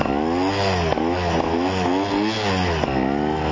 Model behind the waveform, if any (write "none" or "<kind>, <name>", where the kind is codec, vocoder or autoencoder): none